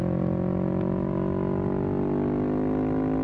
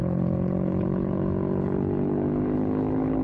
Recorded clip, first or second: first